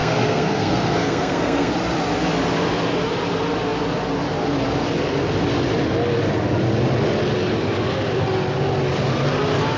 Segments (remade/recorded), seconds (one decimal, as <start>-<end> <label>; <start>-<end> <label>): 0.0-1.7 remade; 1.7-9.8 recorded